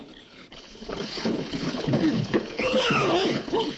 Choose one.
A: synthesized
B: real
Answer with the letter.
A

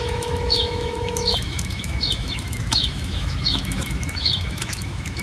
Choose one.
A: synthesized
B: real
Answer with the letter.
A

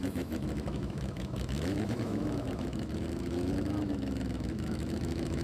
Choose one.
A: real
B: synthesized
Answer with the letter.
B